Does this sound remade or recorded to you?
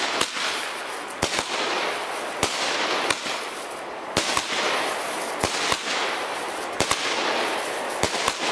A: recorded